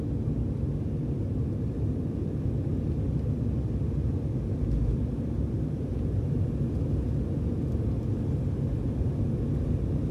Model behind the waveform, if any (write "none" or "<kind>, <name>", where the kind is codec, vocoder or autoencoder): none